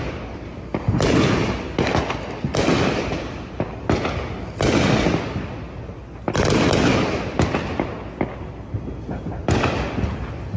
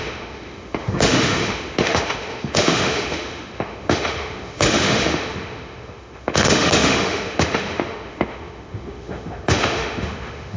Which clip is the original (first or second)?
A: first